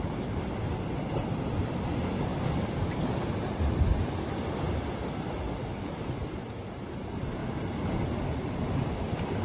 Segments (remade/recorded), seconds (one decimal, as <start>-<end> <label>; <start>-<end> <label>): 0.0-2.3 recorded; 2.3-3.8 remade; 3.8-9.4 recorded